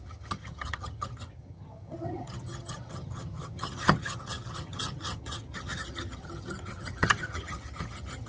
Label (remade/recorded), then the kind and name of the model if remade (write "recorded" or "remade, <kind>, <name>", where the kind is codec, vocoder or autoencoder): remade, vocoder, HiFi-GAN